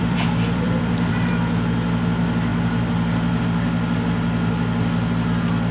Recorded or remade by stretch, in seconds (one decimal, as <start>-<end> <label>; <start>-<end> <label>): 0.0-1.3 remade; 1.3-5.7 recorded